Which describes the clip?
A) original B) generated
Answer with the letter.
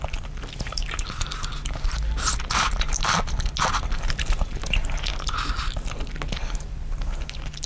A